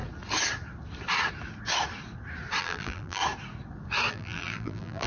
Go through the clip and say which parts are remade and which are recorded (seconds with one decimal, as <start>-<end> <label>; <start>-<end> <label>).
0.0-2.6 recorded; 2.6-3.2 remade; 3.2-4.1 recorded; 4.1-5.1 remade